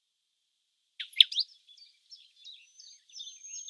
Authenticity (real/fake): real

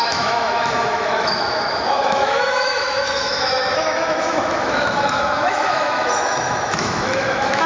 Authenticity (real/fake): fake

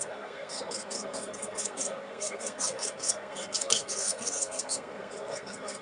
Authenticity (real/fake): fake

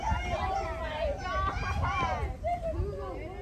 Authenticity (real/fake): real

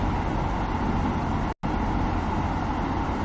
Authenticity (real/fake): real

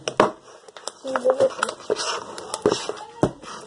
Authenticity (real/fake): real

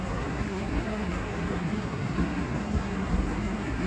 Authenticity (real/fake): fake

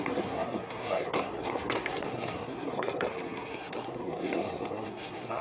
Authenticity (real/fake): fake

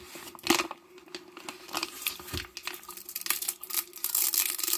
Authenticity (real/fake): real